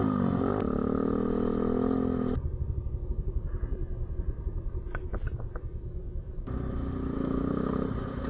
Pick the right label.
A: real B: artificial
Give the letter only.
A